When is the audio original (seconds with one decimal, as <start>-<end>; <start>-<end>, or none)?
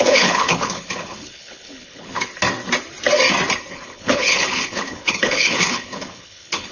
2.3-3.7